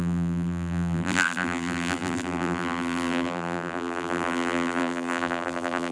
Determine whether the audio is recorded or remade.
remade